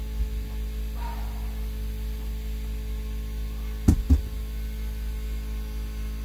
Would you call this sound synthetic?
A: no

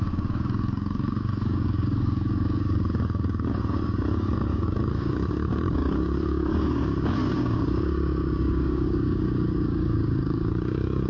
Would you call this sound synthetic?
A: yes